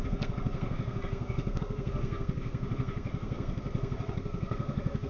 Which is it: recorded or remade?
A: remade